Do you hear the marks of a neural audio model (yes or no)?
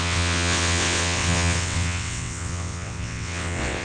yes